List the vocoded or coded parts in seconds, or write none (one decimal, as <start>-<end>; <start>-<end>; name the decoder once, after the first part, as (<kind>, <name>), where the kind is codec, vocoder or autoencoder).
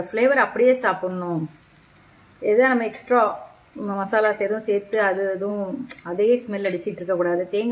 3.0-4.5 (vocoder, Vocos); 5.5-6.9